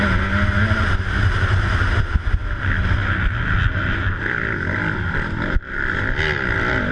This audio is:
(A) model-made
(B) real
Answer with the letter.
B